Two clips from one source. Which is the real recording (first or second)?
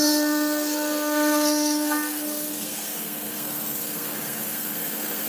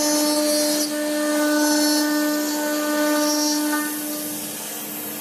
second